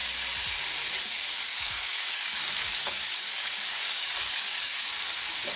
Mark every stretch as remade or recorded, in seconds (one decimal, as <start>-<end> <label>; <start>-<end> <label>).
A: 0.0-1.5 recorded; 1.5-4.9 remade; 4.9-5.6 recorded